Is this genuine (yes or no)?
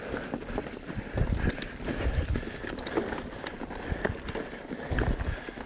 yes